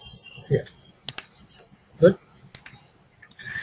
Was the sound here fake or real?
real